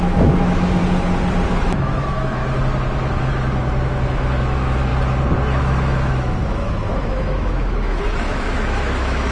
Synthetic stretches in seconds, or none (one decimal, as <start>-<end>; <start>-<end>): 0.0-0.8; 1.5-2.4; 3.3-4.9; 5.6-9.3